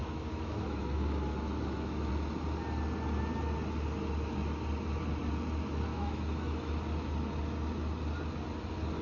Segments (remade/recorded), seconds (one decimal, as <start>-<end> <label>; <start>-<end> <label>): 0.0-2.1 remade; 2.1-5.9 recorded; 5.9-6.7 remade; 6.7-9.0 recorded